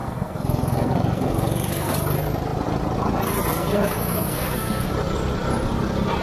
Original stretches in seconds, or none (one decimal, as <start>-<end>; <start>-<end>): 1.9-3.5; 4.9-6.2

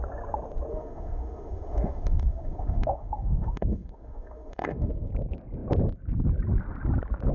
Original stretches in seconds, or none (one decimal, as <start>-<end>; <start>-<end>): 0.0-0.7; 5.1-7.3

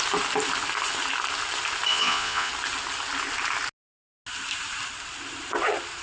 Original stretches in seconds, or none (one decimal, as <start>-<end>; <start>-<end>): 0.0-1.9; 2.5-6.0

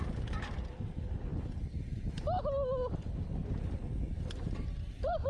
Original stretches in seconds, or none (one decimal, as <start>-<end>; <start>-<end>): 0.0-5.3